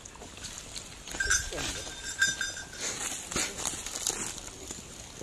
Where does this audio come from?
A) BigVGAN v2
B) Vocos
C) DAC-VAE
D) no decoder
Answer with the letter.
D